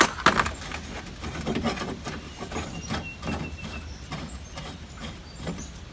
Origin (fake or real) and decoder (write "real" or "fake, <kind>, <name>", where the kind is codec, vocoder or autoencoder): real